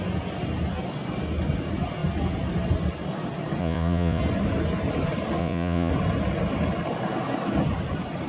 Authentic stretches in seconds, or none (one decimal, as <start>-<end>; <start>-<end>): 0.0-3.6; 4.2-5.4; 5.9-8.3